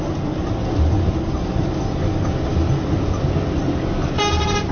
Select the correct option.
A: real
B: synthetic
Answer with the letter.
A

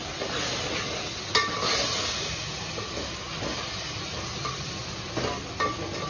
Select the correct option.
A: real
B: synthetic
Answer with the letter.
A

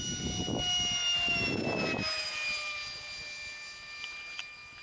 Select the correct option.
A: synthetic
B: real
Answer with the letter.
B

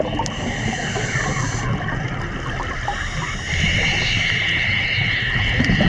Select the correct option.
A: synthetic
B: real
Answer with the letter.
B